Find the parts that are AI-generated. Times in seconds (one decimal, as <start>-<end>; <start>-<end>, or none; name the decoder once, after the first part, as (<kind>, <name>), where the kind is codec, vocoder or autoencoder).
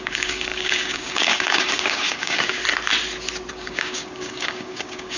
0.0-2.6 (codec, DAC); 3.5-5.2